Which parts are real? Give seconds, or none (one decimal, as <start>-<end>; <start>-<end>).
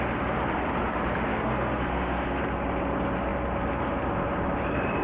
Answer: 0.0-1.3; 2.4-5.0